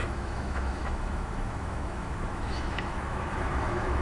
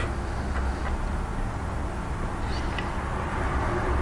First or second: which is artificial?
first